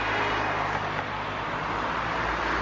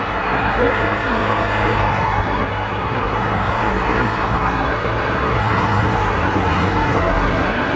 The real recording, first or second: first